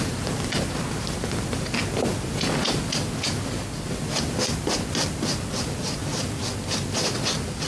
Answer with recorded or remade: recorded